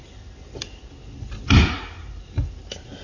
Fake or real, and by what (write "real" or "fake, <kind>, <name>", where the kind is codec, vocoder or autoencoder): real